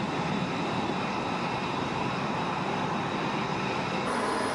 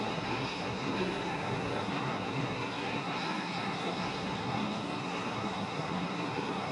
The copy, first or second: second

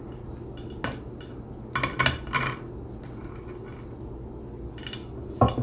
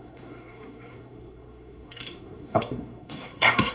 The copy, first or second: second